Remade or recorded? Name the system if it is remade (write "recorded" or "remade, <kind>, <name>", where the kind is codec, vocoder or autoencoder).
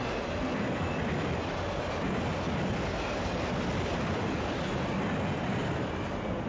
recorded